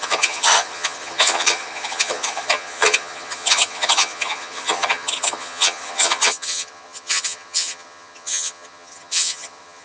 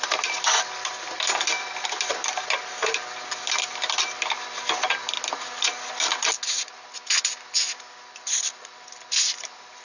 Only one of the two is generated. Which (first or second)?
first